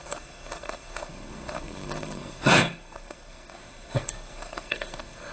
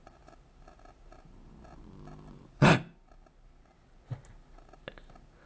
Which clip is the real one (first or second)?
second